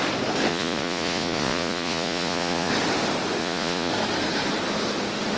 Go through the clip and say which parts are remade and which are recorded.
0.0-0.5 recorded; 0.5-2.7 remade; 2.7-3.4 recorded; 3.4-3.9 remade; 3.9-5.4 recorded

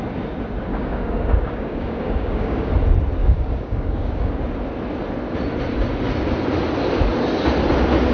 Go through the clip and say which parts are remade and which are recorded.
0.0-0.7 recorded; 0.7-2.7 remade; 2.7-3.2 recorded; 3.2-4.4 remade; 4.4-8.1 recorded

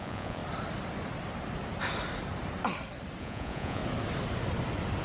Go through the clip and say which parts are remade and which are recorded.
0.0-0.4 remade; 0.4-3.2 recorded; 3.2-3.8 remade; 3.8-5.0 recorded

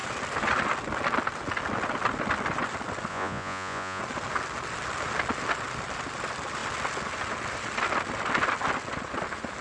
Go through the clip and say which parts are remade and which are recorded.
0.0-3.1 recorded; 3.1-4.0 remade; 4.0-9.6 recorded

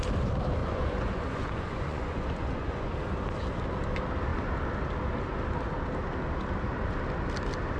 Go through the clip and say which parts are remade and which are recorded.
0.0-0.6 recorded; 0.6-2.9 remade; 2.9-7.8 recorded

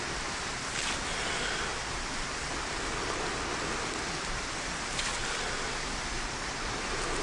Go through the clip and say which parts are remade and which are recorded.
0.0-7.2 recorded

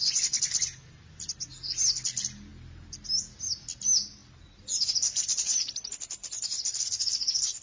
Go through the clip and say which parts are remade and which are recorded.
0.0-2.5 recorded; 2.5-3.4 remade; 3.4-4.2 recorded; 4.2-7.6 remade